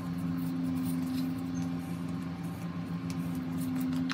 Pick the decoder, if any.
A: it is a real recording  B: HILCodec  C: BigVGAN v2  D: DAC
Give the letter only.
A